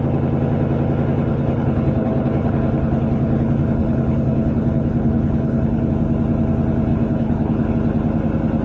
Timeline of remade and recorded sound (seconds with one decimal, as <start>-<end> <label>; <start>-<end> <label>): 0.0-1.3 recorded; 1.3-5.9 remade; 5.9-6.9 recorded; 6.9-7.7 remade; 7.7-8.6 recorded